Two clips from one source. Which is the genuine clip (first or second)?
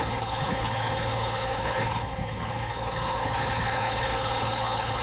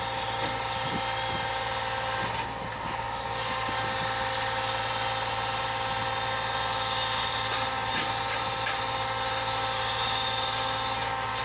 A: second